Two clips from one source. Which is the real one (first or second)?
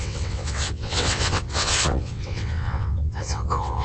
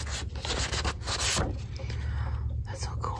second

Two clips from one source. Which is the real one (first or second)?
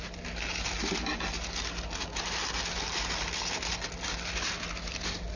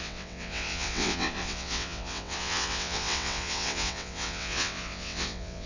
first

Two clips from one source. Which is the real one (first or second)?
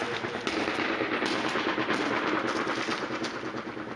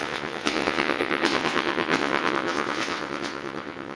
first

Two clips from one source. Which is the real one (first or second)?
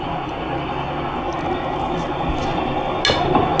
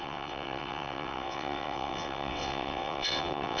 first